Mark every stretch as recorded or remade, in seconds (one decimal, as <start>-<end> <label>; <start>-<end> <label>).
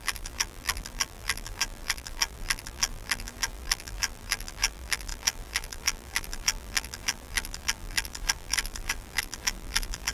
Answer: 0.0-10.1 remade